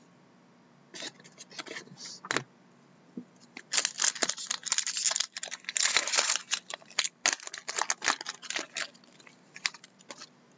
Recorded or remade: recorded